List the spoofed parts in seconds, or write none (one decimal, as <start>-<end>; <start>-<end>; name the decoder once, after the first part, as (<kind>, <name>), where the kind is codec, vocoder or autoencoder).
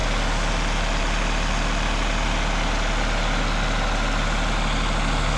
none